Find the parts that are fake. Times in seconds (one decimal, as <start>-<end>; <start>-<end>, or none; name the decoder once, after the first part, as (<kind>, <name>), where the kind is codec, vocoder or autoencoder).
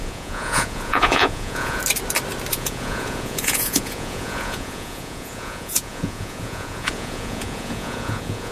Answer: 0.0-1.8 (vocoder, Vocos); 2.5-8.5